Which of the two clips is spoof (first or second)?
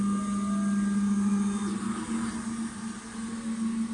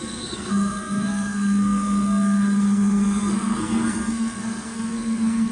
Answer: second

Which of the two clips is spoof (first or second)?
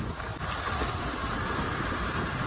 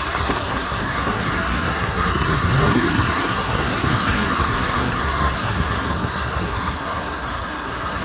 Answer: second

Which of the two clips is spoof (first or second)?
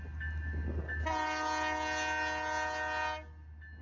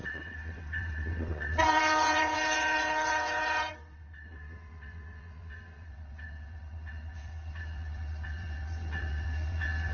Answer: second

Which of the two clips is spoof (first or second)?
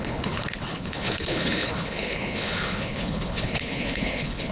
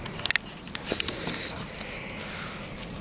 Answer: first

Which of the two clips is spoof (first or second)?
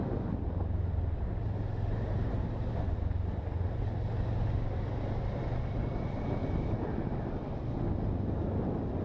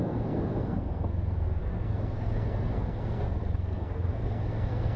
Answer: second